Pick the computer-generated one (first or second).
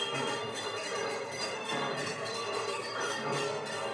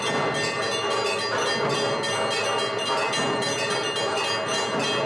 first